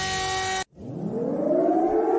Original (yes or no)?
yes